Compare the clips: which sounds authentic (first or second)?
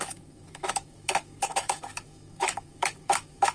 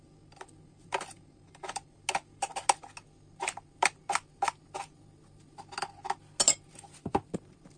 second